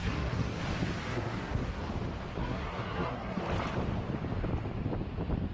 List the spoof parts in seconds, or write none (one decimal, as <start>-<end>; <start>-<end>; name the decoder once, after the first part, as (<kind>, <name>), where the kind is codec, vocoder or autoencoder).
0.0-0.6 (codec, SNAC); 1.1-1.8; 2.4-3.4